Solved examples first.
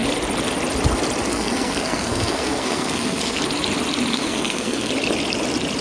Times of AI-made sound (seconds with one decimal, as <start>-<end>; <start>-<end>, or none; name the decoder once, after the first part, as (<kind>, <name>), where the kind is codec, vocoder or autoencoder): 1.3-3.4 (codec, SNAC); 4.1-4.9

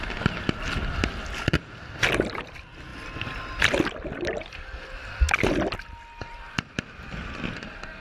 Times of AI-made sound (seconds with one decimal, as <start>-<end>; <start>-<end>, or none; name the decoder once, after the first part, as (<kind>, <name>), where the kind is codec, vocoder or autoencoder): none

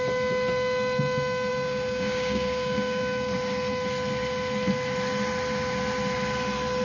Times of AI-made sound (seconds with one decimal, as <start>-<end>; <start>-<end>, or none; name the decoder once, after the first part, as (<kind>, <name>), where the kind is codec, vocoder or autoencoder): 1.5-3.0 (codec, DAC)

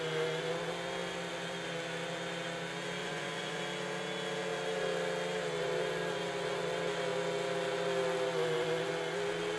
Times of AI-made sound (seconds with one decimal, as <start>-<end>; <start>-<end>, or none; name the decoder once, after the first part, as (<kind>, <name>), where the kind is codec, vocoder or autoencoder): 3.0-3.6 (vocoder, Vocos)

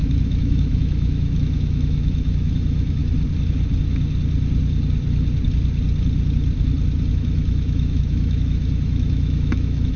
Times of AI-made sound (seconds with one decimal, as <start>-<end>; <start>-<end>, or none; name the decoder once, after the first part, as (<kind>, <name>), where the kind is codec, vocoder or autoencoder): 0.0-3.0 (autoencoder, DAC-VAE); 7.1-10.0

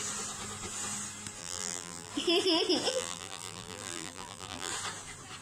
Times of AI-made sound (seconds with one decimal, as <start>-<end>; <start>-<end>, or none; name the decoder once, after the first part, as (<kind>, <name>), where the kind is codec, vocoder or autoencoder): 1.4-2.1 (vocoder, BigVGAN v2); 2.9-4.7